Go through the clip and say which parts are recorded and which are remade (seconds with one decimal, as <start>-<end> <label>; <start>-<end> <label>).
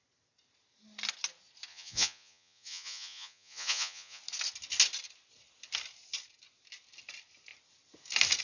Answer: 0.0-1.7 recorded; 1.7-4.2 remade; 4.2-8.4 recorded